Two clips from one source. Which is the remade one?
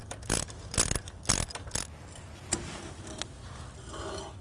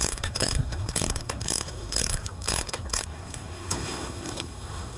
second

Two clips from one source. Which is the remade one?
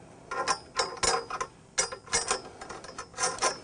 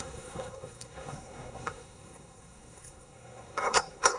second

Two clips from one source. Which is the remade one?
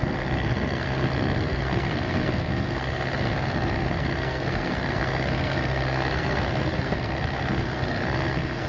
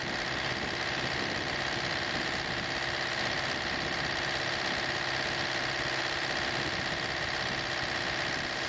first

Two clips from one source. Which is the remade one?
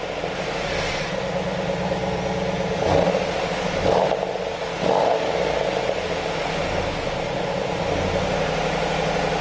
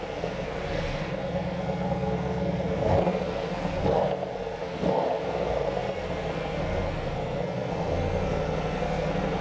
second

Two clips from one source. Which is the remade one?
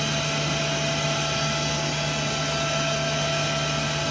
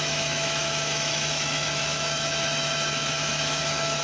second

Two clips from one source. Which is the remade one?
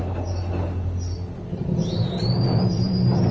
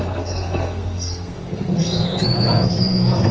second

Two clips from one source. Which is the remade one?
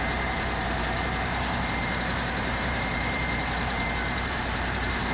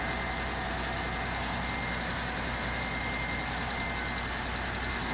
first